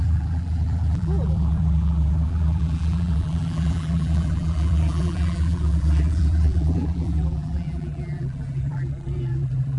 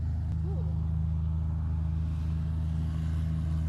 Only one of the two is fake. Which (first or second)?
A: first